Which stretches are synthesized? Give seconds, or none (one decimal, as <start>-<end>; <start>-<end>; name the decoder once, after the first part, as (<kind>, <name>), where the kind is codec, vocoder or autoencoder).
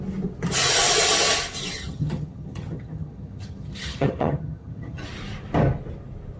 1.8-5.0 (vocoder, HiFi-GAN)